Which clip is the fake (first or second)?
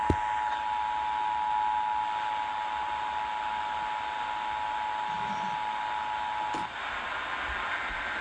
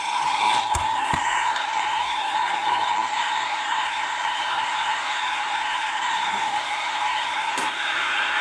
second